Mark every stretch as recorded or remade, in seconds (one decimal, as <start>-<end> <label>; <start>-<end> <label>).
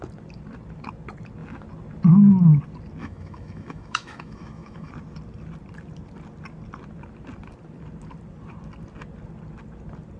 0.0-3.0 recorded; 3.0-4.9 remade; 4.9-10.2 recorded